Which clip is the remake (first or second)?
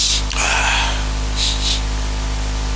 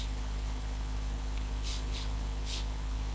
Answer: second